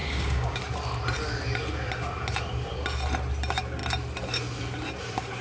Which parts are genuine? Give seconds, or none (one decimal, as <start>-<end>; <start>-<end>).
0.6-5.4